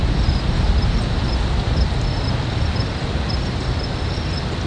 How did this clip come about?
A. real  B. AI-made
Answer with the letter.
A